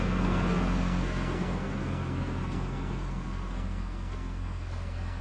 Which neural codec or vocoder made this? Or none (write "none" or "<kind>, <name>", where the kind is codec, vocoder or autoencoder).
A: codec, SNAC